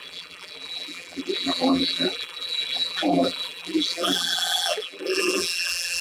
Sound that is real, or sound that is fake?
fake